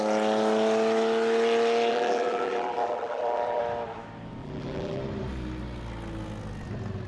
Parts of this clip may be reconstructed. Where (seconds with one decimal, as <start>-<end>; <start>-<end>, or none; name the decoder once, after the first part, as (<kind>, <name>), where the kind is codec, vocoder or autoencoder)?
1.9-3.6 (vocoder, BigVGAN v2); 4.4-5.0